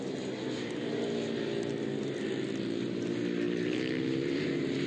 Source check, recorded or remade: recorded